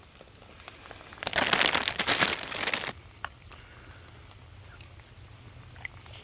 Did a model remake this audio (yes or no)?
no